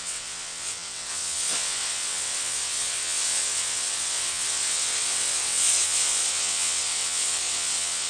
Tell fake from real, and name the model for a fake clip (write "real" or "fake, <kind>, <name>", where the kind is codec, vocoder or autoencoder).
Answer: fake, vocoder, WaveNeXt